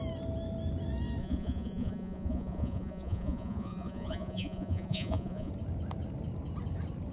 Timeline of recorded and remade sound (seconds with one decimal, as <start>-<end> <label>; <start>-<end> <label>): 0.0-1.2 recorded; 1.2-5.5 remade; 5.5-7.1 recorded